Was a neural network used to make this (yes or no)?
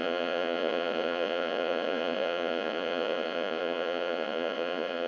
yes